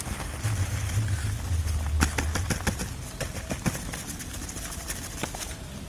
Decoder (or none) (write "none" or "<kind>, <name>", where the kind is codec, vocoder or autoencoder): vocoder, BigVGAN v2